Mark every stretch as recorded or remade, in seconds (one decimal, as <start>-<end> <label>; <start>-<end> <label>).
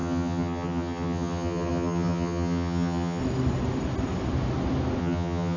0.0-3.2 remade; 3.2-5.0 recorded; 5.0-5.6 remade